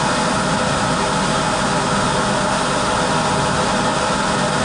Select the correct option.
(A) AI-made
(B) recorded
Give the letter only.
B